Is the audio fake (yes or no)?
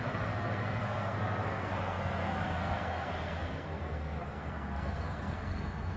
yes